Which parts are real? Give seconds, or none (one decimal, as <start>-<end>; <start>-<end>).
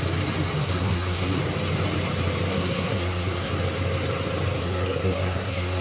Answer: 0.0-0.6; 1.4-2.5; 3.5-4.6